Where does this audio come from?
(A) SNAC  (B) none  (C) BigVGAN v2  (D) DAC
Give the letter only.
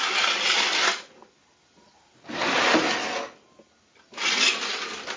B